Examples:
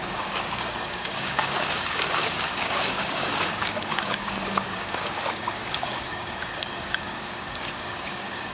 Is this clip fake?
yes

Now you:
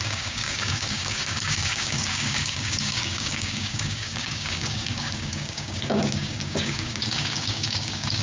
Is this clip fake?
yes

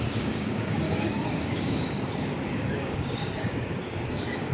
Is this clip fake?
yes